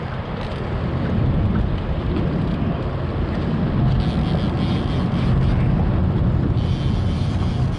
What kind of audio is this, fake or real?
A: real